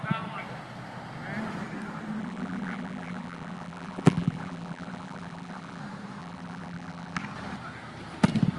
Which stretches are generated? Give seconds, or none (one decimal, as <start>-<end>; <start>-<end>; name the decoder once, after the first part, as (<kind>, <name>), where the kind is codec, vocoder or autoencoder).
2.2-5.8 (vocoder, BigVGAN v2); 6.2-7.2